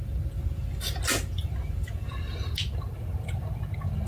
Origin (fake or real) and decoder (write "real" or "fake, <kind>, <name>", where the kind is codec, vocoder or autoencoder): real